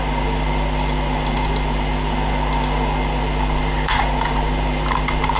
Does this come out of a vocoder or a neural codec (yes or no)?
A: no